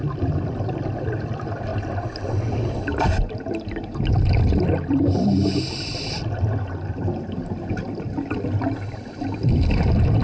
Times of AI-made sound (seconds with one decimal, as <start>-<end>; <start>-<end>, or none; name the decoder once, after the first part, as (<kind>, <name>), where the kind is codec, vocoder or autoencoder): none